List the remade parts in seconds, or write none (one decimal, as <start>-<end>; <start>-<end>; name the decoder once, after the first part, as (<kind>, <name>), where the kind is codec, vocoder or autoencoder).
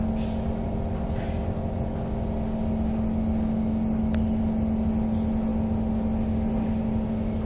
none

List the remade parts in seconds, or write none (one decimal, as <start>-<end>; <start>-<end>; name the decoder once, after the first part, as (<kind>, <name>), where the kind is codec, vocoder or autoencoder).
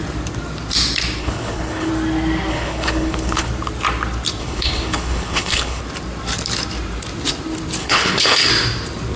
1.2-1.9 (codec, HILCodec); 2.5-3.5; 4.4-5.8; 7.8-8.5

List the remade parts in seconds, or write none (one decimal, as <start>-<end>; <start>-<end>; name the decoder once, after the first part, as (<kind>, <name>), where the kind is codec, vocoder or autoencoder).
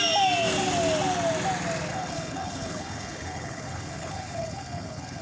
1.9-5.2 (codec, HILCodec)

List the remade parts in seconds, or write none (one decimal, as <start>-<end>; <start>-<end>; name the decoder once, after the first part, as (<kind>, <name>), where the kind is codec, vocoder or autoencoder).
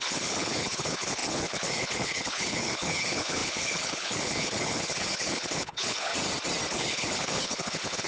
0.0-6.1 (codec, HILCodec); 6.7-8.1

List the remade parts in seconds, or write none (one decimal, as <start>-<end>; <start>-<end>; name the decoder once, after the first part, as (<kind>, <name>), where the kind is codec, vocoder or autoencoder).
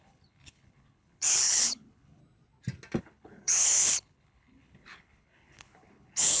0.0-2.2 (codec, HILCodec); 3.0-6.4